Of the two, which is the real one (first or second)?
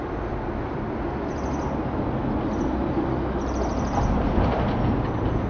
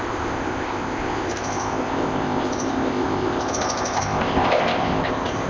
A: first